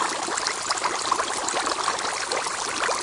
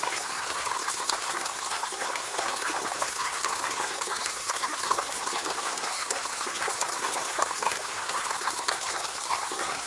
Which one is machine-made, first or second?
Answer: second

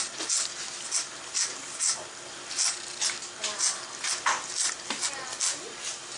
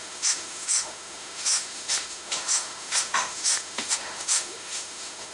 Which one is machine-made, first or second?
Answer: second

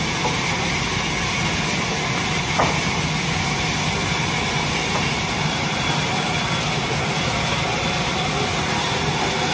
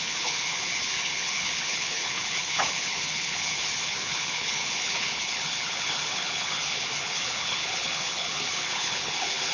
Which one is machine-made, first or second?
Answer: second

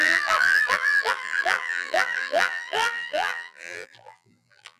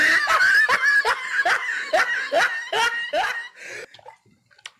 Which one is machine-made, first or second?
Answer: first